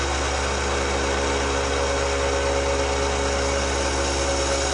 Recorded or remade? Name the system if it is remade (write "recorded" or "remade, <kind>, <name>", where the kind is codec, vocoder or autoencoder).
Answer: recorded